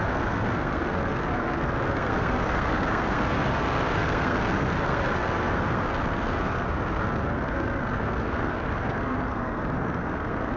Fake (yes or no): yes